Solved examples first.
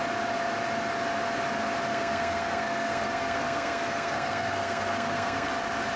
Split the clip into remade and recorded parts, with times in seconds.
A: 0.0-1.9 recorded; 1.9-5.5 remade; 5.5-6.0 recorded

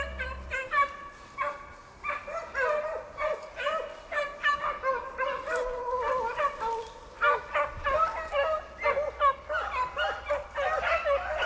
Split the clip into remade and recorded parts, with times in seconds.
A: 0.0-11.5 recorded

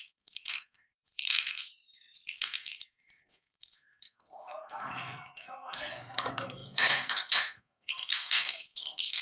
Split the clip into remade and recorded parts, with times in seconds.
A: 0.0-9.2 remade

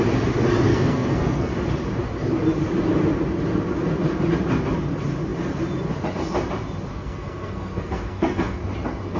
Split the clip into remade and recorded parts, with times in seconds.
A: 0.0-0.7 recorded; 0.7-1.5 remade; 1.5-6.9 recorded; 6.9-8.6 remade; 8.6-9.2 recorded